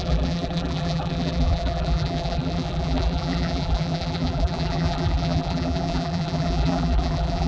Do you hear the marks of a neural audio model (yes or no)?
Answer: yes